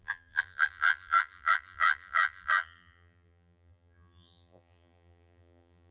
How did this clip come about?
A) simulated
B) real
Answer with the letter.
A